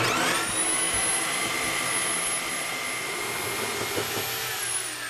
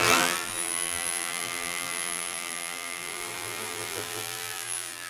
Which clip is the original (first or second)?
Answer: first